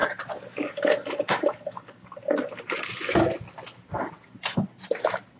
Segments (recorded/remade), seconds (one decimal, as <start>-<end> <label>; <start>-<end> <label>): 0.0-5.4 recorded